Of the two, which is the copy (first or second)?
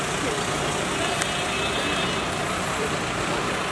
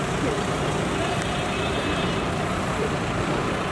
second